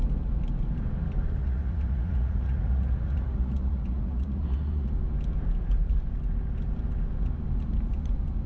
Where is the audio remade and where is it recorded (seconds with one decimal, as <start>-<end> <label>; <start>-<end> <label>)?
0.0-1.4 recorded; 1.4-4.9 remade; 4.9-8.5 recorded